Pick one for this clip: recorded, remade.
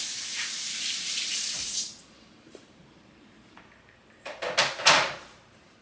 remade